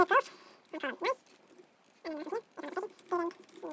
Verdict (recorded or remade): recorded